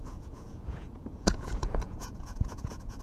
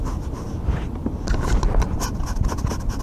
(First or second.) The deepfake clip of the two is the first